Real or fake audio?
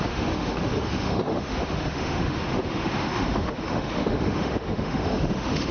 fake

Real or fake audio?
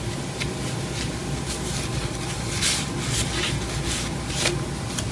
real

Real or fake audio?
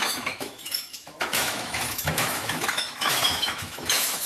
fake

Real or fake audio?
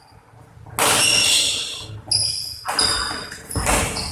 real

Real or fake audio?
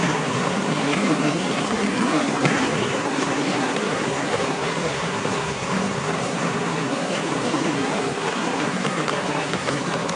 fake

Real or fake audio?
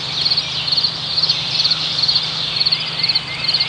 real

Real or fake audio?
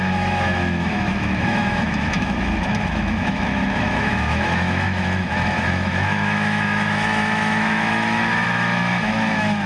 fake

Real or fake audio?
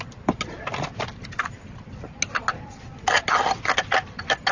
real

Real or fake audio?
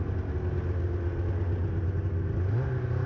real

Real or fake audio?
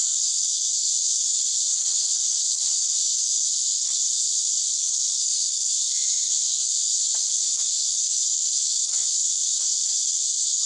fake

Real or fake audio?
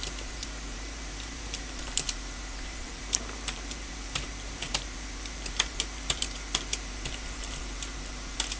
fake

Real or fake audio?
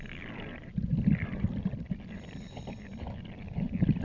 real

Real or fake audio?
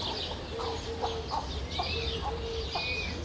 real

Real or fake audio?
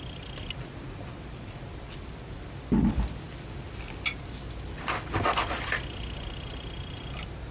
real